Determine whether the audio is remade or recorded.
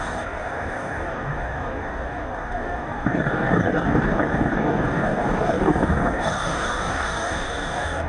remade